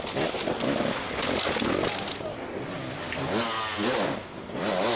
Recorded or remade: recorded